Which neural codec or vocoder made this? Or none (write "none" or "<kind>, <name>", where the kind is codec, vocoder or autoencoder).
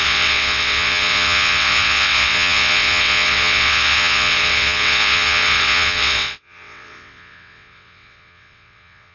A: vocoder, WaveNeXt